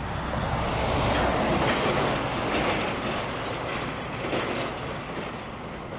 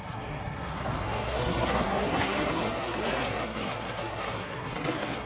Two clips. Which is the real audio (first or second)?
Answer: first